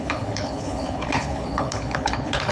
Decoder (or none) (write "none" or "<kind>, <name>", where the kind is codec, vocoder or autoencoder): codec, HILCodec